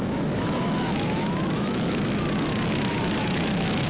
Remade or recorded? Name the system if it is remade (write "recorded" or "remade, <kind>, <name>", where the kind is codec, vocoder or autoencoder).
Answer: remade, autoencoder, DAC-VAE